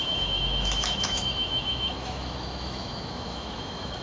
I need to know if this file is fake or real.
fake